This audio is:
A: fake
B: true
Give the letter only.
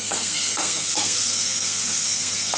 A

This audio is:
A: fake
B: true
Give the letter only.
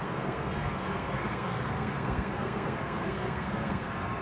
A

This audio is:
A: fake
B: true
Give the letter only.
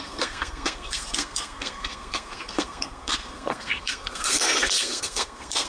A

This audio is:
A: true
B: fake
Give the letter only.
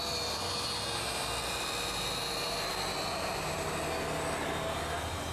A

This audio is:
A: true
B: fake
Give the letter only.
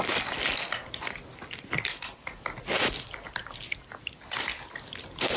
A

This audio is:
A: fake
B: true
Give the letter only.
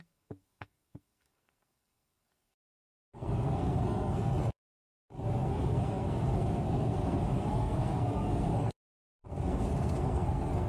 A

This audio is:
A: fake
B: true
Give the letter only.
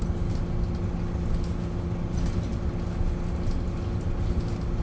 B